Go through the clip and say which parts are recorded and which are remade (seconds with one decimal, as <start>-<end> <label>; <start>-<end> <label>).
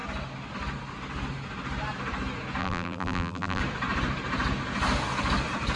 0.0-2.6 recorded; 2.6-3.6 remade; 3.6-5.8 recorded